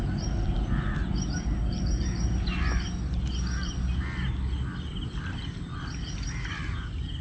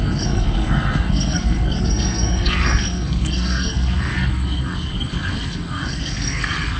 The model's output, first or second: second